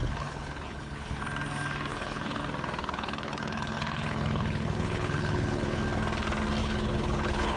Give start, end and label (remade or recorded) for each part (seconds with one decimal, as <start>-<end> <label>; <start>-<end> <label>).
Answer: 0.0-1.2 remade; 1.2-1.9 recorded; 1.9-2.4 remade; 2.4-2.8 recorded; 2.8-5.8 remade; 5.8-6.6 recorded; 6.6-7.6 remade